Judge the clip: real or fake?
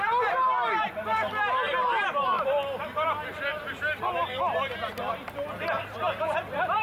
real